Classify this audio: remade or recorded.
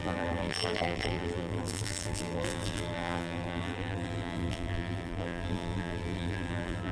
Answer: remade